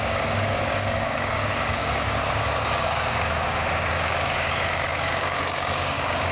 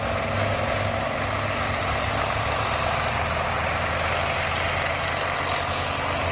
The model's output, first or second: first